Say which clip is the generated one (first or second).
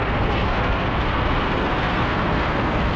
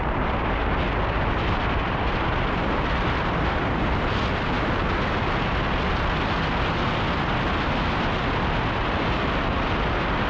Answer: first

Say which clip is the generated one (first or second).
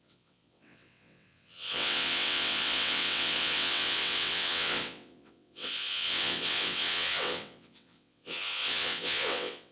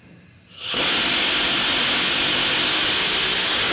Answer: first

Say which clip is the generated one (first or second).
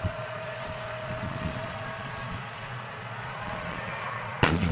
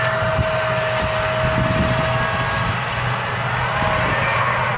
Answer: first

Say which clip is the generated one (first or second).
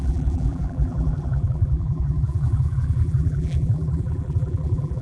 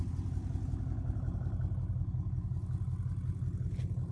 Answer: first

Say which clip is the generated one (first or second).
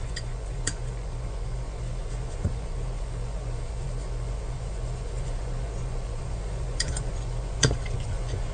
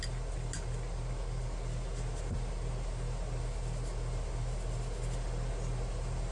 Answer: first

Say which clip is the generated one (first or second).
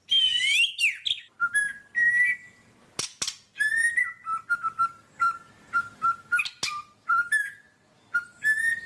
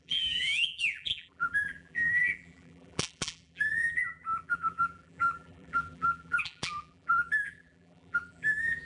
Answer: second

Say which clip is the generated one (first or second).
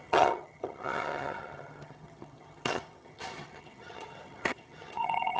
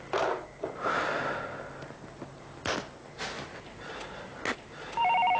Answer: first